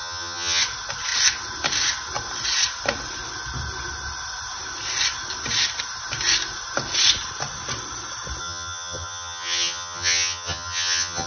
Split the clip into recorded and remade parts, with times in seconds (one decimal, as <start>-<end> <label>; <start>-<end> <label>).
0.0-0.6 remade; 0.6-8.4 recorded; 8.4-11.3 remade